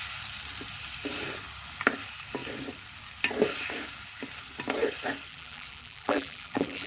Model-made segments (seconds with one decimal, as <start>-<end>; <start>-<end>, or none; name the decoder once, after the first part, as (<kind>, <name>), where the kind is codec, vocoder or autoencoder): 5.3-6.9 (vocoder, BigVGAN v2)